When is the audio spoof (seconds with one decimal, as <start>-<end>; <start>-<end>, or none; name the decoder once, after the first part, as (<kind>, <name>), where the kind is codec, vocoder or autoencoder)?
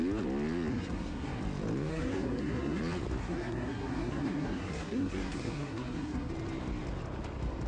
0.7-1.4 (codec, SNAC); 1.9-2.8; 3.2-6.3